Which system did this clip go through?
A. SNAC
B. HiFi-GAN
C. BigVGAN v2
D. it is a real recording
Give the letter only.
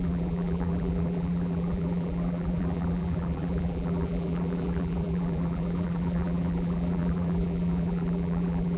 C